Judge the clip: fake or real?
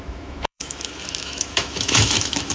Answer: fake